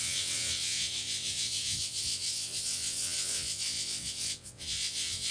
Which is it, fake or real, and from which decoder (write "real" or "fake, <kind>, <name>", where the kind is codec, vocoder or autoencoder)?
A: fake, vocoder, WaveNeXt